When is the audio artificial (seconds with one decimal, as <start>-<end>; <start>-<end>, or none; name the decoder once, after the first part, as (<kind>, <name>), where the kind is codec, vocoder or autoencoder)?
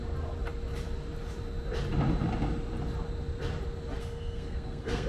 4.0-5.1 (codec, SNAC)